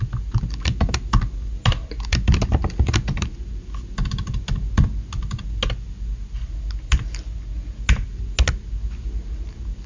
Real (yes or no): yes